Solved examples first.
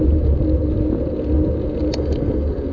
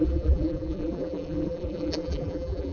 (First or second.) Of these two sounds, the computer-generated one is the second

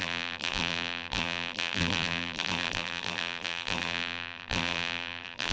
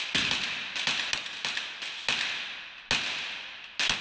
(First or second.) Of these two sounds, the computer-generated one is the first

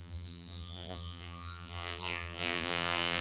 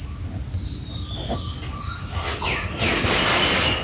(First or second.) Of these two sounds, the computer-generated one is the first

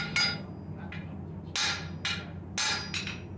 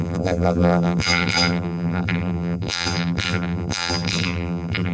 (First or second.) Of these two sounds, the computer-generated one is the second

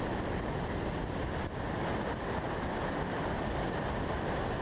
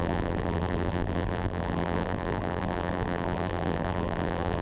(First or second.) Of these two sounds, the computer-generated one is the second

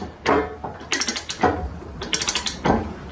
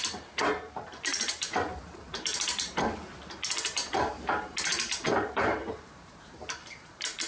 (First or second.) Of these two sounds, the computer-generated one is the second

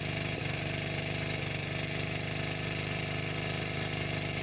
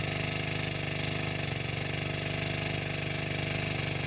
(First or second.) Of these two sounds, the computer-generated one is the first